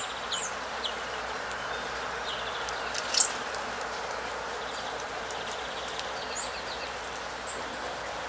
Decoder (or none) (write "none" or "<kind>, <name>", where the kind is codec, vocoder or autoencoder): none